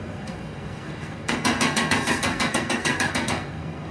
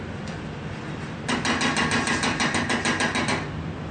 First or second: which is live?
second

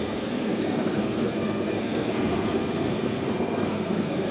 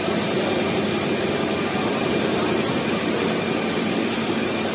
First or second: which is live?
second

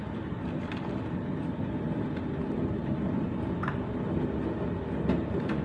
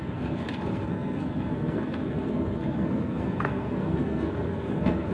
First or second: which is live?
first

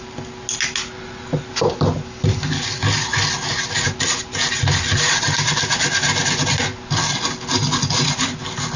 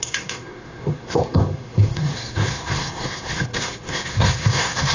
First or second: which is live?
first